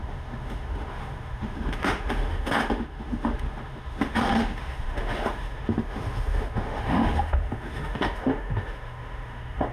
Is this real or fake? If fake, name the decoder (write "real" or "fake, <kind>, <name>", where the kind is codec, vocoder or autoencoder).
fake, autoencoder, DAC-VAE